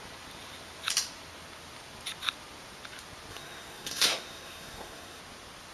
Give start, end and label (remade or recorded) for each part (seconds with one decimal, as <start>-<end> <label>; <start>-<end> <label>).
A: 0.0-3.3 recorded; 3.3-5.2 remade; 5.2-5.7 recorded